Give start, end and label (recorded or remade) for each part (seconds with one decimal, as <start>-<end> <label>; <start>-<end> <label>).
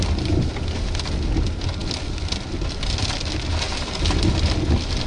0.0-5.1 recorded